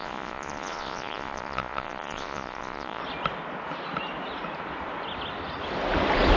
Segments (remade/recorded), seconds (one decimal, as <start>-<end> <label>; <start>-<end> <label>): 0.0-3.0 remade; 3.0-6.4 recorded